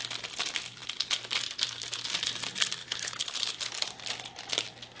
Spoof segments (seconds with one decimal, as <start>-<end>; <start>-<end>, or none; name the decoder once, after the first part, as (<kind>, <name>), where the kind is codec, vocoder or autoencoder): 2.8-3.7 (codec, HILCodec)